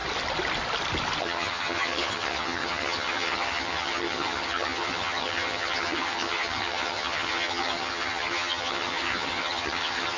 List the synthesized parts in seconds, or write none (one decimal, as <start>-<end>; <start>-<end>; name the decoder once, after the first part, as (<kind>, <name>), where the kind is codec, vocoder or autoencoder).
1.2-10.2 (vocoder, HiFi-GAN)